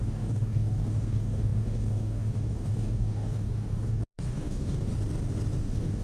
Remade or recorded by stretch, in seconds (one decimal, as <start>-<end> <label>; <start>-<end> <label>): 0.0-4.9 remade; 4.9-5.6 recorded; 5.6-6.0 remade